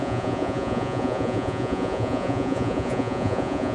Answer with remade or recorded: remade